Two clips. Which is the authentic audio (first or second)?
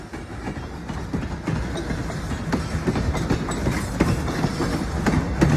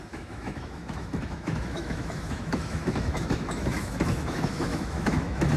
first